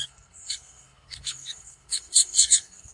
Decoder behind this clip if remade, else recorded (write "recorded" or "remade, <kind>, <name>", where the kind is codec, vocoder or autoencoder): remade, codec, SNAC